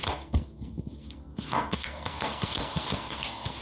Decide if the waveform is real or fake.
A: fake